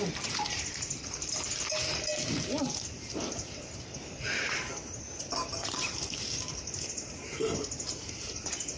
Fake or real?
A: fake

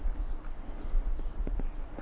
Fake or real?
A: real